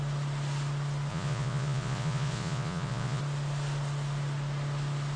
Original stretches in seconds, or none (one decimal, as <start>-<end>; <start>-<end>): 0.0-1.1; 3.2-5.2